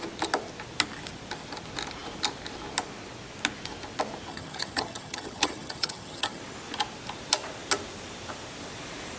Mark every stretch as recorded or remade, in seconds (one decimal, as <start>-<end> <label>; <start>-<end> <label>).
0.0-4.3 recorded; 4.3-6.4 remade; 6.4-9.2 recorded